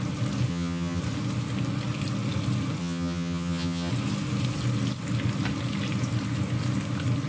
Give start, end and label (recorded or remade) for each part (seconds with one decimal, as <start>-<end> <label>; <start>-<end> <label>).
0.0-0.5 recorded; 0.5-1.0 remade; 1.0-2.8 recorded; 2.8-3.9 remade; 3.9-7.3 recorded